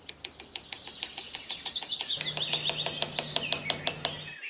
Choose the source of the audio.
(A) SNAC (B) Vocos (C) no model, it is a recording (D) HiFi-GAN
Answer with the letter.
C